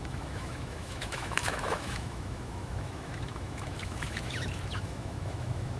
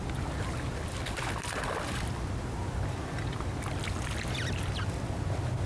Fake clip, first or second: first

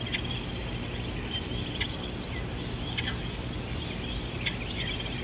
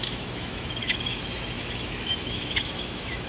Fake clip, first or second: second